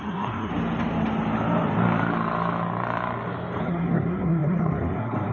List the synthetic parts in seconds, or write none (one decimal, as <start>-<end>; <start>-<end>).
0.0-0.5; 3.6-5.3